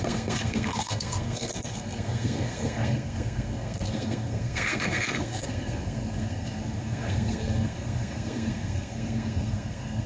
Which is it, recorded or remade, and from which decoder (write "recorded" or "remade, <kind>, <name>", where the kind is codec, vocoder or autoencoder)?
remade, codec, SNAC